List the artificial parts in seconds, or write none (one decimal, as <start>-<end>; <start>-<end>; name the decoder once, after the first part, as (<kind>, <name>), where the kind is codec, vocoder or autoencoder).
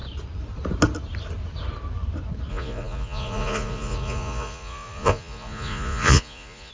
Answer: 2.5-6.7 (vocoder, Vocos)